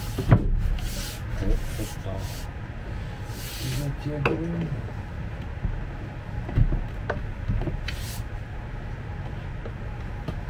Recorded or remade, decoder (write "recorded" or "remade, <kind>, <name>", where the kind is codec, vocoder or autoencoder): recorded